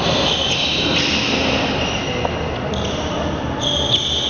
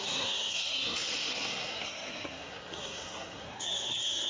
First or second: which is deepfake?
second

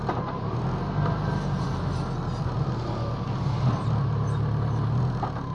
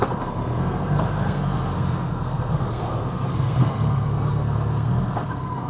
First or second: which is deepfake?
second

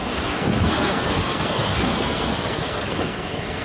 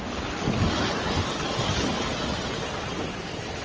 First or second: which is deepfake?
first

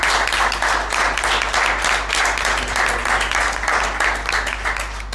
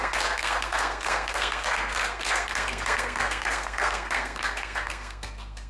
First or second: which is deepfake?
second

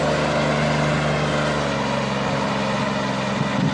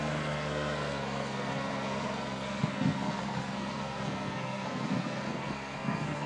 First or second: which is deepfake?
second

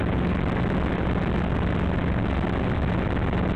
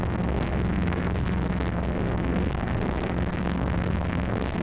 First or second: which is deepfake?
second